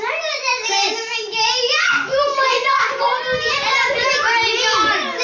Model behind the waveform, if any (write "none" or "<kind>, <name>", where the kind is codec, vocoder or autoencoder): none